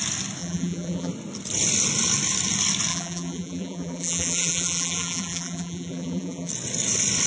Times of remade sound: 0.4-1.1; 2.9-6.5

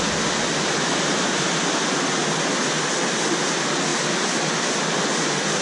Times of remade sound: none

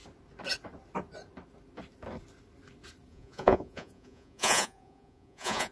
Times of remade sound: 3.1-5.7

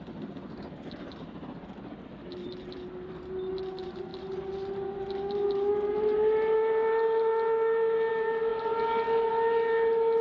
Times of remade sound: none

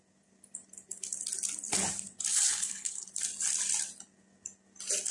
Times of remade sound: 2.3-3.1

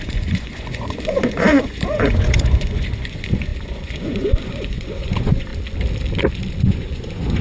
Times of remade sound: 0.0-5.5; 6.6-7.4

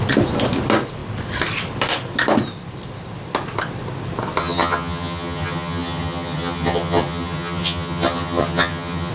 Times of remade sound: 4.4-9.1

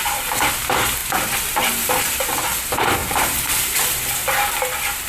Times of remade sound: 3.0-4.0